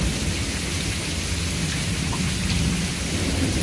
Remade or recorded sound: recorded